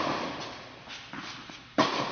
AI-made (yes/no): no